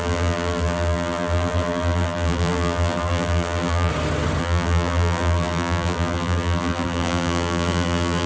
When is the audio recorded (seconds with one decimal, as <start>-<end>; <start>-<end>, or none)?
3.9-4.4